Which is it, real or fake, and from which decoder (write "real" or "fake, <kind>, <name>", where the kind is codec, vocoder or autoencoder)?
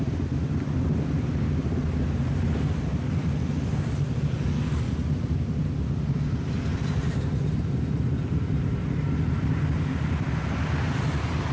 real